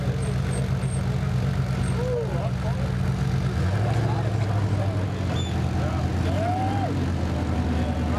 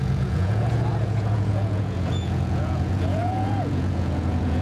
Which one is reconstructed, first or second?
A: second